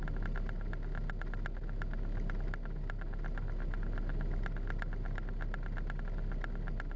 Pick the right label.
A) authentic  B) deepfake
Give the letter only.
A